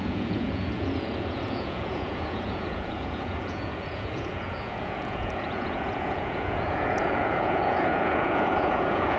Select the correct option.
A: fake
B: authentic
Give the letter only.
A